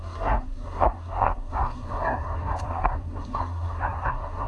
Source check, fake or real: fake